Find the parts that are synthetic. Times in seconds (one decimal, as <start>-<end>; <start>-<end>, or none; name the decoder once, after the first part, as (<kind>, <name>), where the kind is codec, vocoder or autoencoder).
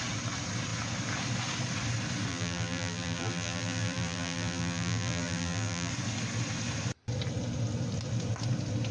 2.3-5.9 (vocoder, BigVGAN v2)